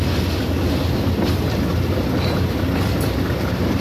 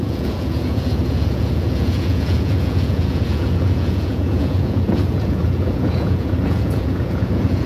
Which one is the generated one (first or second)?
second